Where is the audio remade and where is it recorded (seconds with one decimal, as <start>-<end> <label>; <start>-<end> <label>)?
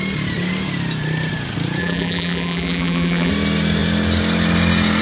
0.0-1.8 recorded; 1.8-3.3 remade; 3.3-5.0 recorded